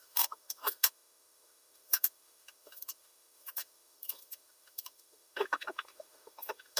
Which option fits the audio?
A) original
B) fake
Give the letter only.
B